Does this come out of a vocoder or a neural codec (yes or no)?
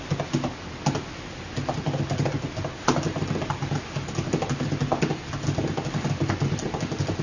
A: no